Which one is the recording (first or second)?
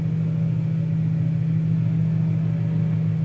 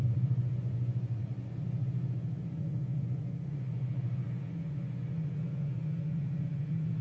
first